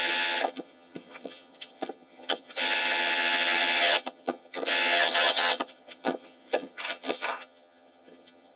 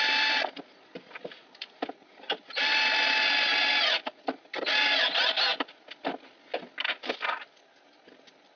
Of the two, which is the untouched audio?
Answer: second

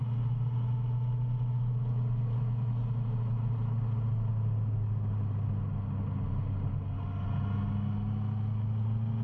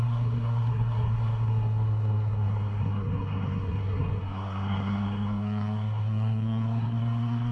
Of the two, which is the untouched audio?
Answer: first